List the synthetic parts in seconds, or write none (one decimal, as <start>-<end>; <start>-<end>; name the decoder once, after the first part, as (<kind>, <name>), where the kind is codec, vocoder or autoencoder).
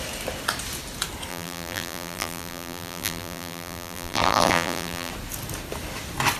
1.3-5.1 (vocoder, BigVGAN v2)